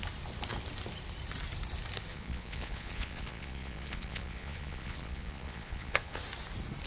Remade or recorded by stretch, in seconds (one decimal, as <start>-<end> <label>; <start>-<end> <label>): 0.0-2.1 recorded; 2.1-6.2 remade; 6.2-6.9 recorded